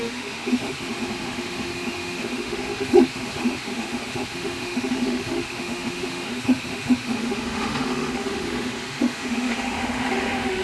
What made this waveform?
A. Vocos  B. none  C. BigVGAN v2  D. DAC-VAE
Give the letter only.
D